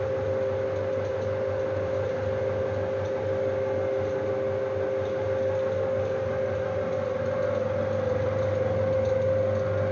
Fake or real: real